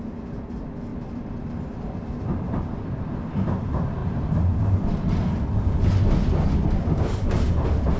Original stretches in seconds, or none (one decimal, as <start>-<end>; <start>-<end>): 0.0-8.0